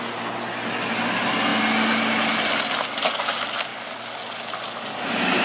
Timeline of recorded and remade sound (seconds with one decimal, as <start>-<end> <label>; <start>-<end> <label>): 0.0-5.4 recorded